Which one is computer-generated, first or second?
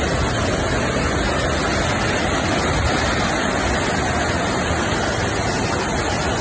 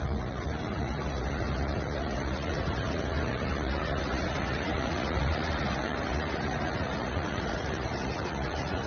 second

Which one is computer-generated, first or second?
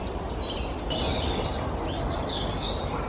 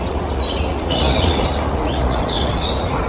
second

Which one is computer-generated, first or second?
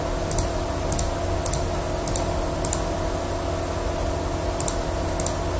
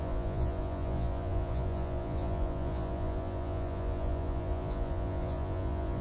second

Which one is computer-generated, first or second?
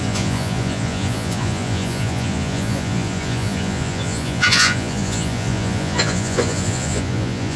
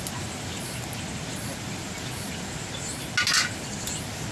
first